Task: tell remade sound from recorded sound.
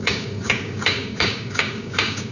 remade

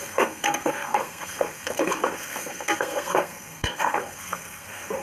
remade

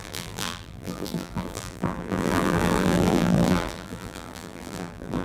remade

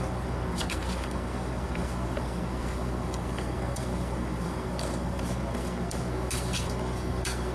remade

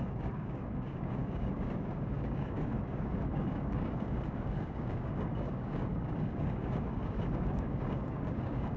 remade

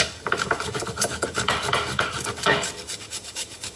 remade